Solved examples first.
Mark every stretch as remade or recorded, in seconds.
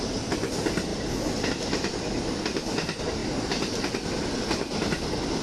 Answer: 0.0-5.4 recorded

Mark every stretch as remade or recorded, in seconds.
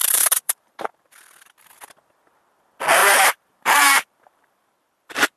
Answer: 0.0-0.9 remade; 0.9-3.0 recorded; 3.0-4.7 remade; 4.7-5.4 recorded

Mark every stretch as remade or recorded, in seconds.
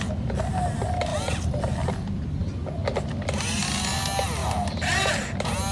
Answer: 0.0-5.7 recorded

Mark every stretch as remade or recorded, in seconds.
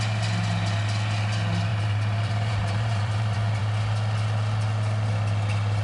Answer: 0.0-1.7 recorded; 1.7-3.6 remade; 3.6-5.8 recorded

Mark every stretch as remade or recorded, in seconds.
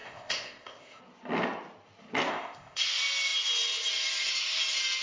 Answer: 0.0-1.0 remade; 1.0-2.3 recorded; 2.3-2.9 remade; 2.9-5.0 recorded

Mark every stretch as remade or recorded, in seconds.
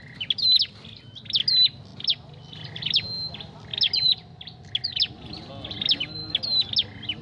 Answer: 0.0-7.2 recorded